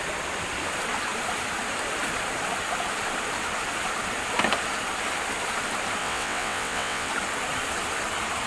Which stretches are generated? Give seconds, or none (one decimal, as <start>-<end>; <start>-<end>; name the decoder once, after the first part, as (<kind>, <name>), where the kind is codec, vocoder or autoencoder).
6.0-7.1 (vocoder, WaveNeXt)